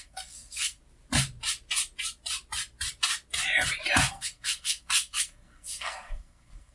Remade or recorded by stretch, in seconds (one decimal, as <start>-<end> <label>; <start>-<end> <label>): 0.0-0.8 remade; 0.8-4.1 recorded; 4.1-6.7 remade